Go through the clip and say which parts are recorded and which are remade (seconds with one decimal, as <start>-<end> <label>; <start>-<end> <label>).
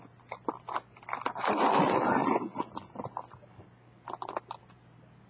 0.0-5.3 recorded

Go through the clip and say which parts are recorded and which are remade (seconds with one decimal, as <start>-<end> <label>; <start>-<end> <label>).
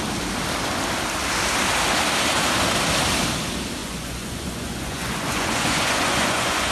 0.0-3.8 recorded; 3.8-6.7 remade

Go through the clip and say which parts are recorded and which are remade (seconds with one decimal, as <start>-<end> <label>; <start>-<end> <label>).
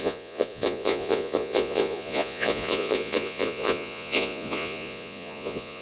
0.0-5.8 remade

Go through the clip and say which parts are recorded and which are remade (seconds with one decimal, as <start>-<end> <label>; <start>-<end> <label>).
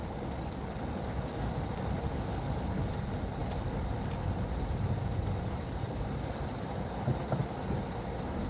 0.0-0.7 remade; 0.7-8.5 recorded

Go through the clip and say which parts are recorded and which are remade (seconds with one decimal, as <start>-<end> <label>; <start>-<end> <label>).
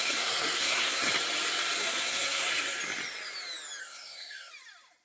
0.0-1.0 remade; 1.0-1.8 recorded; 1.8-2.8 remade; 2.8-3.8 recorded; 3.8-4.5 remade; 4.5-5.0 recorded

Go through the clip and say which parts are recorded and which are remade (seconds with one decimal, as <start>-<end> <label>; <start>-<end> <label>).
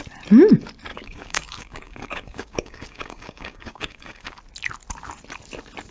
0.0-0.9 recorded; 0.9-4.4 remade; 4.4-5.9 recorded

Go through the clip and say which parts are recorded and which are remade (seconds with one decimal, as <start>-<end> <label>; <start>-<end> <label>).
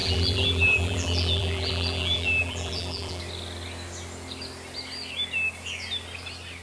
0.0-3.2 remade; 3.2-6.6 recorded